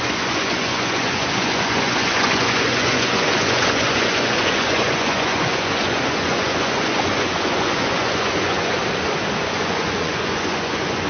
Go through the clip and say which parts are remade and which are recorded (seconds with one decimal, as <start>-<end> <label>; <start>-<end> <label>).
0.0-8.8 remade; 8.8-9.4 recorded; 9.4-11.1 remade